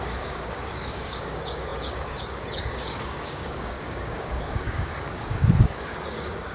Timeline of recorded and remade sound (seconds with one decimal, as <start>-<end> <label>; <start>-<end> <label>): 0.0-6.5 remade